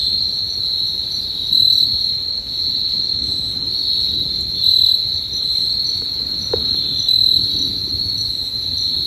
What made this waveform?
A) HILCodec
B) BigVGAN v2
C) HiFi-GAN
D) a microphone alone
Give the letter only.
D